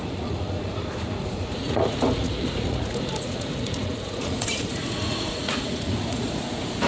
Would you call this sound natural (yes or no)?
no